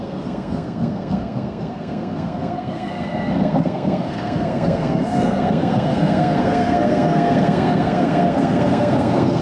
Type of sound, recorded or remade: remade